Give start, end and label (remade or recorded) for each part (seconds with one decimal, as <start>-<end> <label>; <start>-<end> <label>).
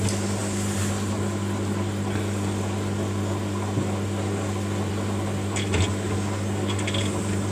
0.0-7.5 recorded